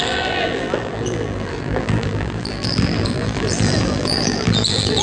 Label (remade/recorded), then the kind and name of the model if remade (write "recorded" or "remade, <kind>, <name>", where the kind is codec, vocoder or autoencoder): remade, vocoder, BigVGAN v2